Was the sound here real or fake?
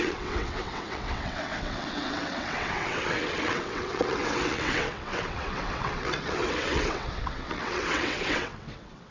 fake